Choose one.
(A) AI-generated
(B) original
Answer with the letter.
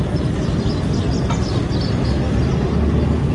B